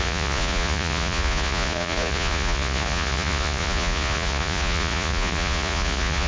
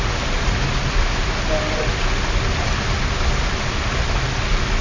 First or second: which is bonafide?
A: second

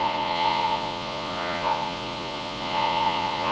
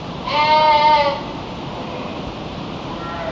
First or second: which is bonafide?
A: second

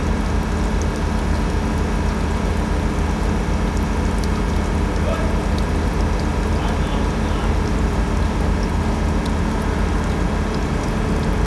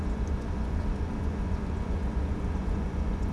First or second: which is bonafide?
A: first